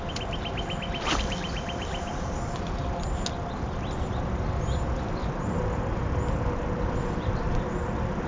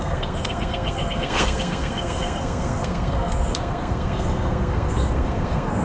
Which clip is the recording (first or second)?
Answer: first